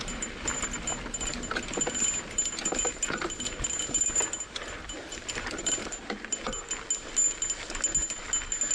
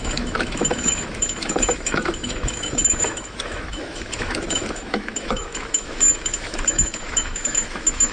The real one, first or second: first